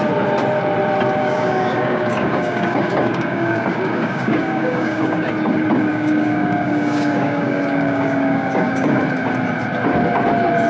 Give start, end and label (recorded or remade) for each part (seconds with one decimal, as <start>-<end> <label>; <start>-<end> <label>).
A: 0.0-1.2 recorded; 1.2-5.3 remade; 5.3-5.9 recorded; 5.9-9.0 remade; 9.0-10.7 recorded